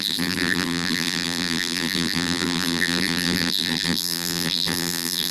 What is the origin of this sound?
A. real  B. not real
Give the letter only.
B